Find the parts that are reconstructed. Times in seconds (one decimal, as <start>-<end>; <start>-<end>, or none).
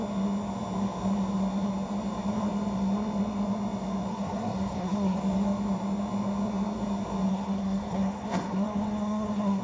4.1-5.2; 7.3-9.6